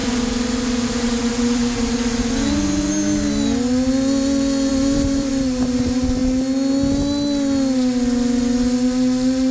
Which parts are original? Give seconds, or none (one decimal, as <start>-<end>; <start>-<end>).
2.3-4.7; 5.3-9.5